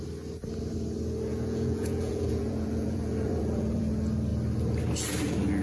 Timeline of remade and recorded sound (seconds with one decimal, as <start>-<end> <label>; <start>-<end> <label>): 0.0-1.3 recorded; 1.3-3.8 remade; 3.8-5.6 recorded